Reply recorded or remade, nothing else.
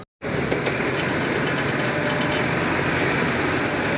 recorded